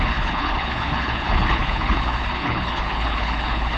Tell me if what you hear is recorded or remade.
remade